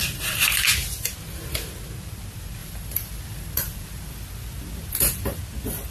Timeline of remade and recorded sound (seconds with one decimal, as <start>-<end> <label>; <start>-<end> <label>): 0.0-2.6 recorded; 2.6-5.4 remade; 5.4-5.9 recorded